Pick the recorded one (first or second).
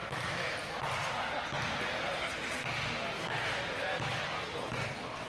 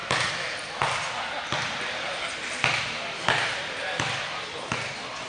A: first